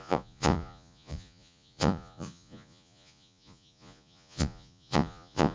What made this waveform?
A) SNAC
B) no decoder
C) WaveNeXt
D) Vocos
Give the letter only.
D